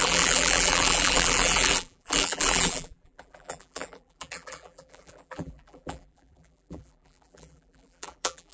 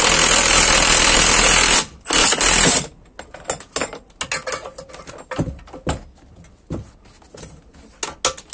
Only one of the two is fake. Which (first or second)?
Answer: first